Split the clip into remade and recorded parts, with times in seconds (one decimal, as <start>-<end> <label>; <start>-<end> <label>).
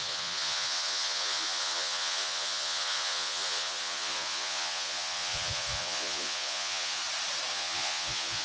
0.0-7.0 remade; 7.0-7.5 recorded; 7.5-8.4 remade